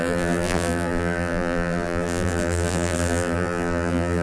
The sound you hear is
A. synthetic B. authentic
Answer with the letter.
A